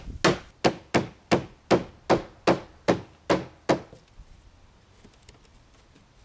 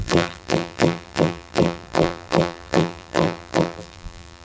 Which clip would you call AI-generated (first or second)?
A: second